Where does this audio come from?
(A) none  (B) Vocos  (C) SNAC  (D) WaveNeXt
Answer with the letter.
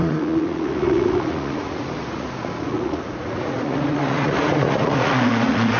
B